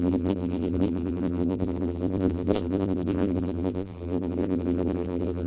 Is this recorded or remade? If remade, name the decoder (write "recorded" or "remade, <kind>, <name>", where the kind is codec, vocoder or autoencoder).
remade, vocoder, BigVGAN v2